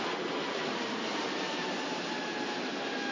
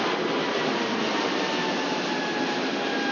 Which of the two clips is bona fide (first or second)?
second